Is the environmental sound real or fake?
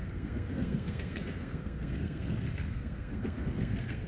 fake